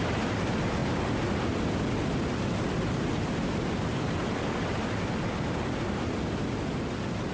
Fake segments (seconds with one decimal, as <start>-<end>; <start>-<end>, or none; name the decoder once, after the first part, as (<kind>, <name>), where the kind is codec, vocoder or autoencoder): none